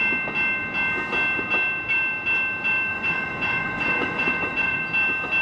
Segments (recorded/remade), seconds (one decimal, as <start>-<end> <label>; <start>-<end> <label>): 0.0-2.9 recorded; 2.9-4.8 remade; 4.8-5.4 recorded